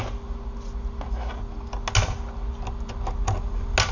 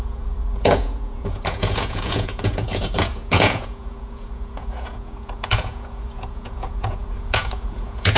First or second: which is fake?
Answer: second